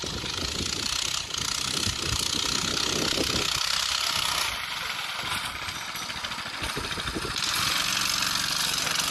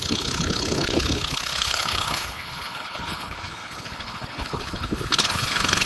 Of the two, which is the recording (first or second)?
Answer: first